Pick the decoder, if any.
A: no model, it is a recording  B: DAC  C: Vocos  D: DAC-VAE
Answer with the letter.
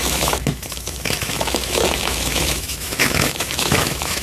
D